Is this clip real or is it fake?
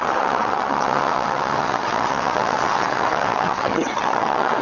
fake